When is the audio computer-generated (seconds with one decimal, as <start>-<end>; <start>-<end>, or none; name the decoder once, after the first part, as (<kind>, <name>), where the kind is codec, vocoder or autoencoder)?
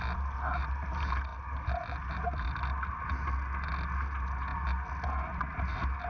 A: none